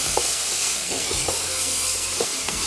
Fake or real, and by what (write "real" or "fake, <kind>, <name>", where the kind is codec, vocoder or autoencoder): fake, codec, SNAC